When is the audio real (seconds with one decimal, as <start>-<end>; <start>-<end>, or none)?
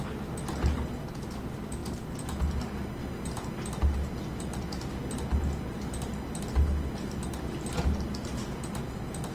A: 0.0-9.3